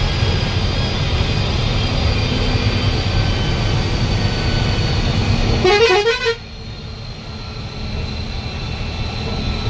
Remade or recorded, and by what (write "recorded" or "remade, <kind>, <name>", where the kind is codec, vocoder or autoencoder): recorded